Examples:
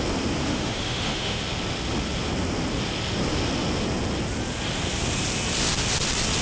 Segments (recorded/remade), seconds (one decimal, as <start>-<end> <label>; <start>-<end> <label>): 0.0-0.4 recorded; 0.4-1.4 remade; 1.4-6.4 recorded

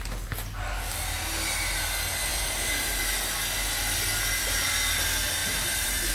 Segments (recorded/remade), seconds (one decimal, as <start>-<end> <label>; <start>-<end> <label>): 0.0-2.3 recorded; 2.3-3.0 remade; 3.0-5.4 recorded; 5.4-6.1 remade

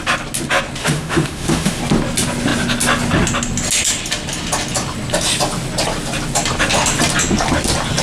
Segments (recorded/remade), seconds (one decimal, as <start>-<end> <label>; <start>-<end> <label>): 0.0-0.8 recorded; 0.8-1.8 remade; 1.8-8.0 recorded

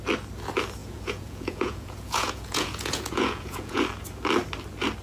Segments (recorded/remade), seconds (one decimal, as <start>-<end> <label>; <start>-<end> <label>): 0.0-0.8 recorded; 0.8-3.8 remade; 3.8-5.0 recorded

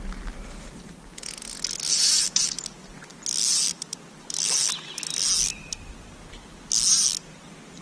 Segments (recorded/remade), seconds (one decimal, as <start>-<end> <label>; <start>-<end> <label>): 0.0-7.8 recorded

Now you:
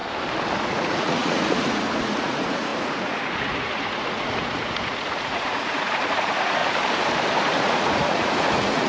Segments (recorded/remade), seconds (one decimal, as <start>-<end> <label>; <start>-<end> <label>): 0.0-0.6 recorded; 0.6-6.6 remade; 6.6-7.4 recorded; 7.4-8.9 remade

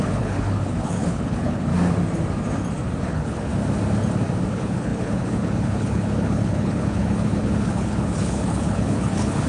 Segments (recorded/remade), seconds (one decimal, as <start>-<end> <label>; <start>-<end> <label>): 0.0-1.7 remade; 1.7-3.0 recorded; 3.0-3.5 remade; 3.5-4.5 recorded; 4.5-9.5 remade